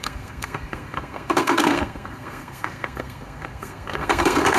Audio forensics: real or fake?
fake